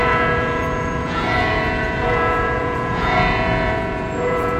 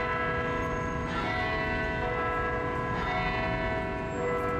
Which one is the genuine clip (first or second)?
second